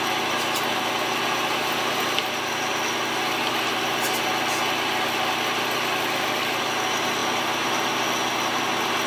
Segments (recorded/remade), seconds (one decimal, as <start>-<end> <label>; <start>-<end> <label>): 0.0-9.1 recorded